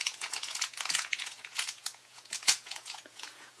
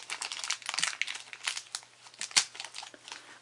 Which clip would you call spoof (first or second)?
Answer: first